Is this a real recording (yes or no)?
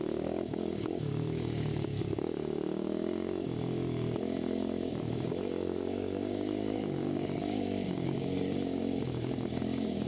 no